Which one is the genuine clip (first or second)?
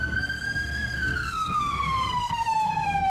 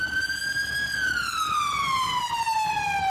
second